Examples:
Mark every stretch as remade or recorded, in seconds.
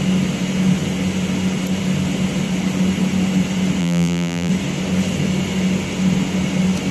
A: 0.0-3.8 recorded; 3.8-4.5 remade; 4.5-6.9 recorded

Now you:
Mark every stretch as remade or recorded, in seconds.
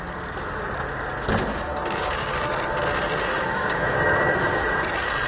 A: 0.0-1.5 recorded; 1.5-2.5 remade; 2.5-3.3 recorded; 3.3-4.1 remade; 4.1-5.3 recorded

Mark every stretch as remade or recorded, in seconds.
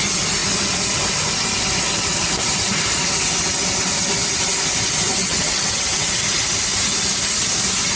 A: 0.0-5.2 recorded; 5.2-6.1 remade; 6.1-8.0 recorded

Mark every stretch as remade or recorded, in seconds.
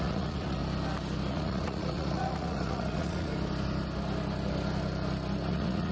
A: 0.0-0.6 remade; 0.6-1.3 recorded; 1.3-3.3 remade; 3.3-5.5 recorded; 5.5-5.9 remade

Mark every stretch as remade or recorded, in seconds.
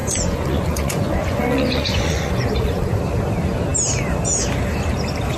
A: 0.0-3.0 remade; 3.0-5.4 recorded